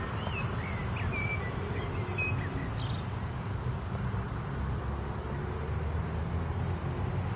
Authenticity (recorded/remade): recorded